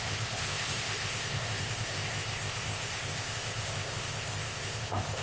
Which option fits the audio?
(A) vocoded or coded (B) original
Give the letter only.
A